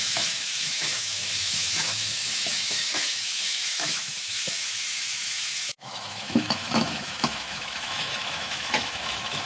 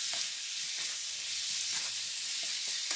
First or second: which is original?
second